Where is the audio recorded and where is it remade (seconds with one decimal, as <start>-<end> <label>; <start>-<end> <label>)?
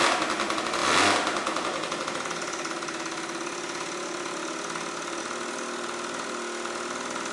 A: 0.0-7.3 recorded